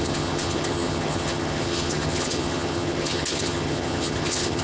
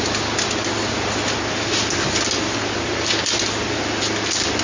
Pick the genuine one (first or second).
second